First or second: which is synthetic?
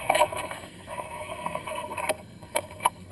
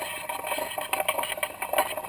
first